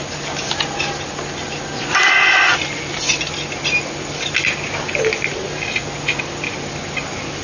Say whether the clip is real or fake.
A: real